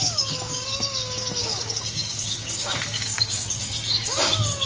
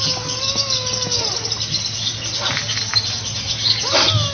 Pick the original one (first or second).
second